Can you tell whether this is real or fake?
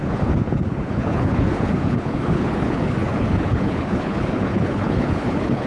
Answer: fake